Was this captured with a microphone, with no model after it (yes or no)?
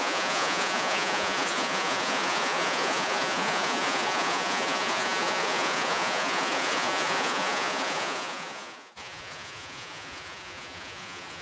no